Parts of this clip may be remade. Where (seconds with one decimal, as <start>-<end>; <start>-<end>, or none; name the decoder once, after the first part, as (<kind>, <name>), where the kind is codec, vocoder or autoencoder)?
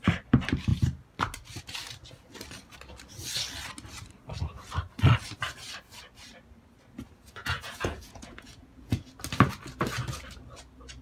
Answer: 7.4-9.1 (vocoder, Vocos)